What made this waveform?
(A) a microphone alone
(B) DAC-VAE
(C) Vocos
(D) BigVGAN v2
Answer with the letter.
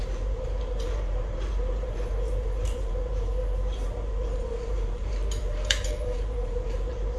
D